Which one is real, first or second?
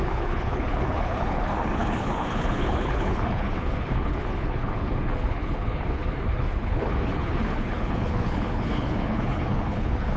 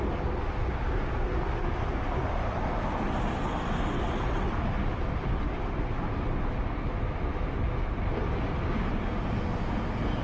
second